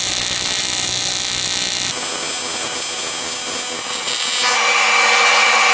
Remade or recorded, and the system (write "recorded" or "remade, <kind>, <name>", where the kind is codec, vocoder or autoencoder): recorded